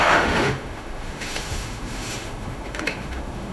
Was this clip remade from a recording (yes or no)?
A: yes